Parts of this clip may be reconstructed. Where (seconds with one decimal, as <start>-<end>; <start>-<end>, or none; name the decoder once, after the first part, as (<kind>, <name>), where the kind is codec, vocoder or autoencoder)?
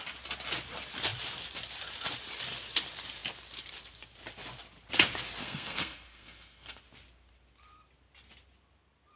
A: 5.4-6.8 (codec, SNAC)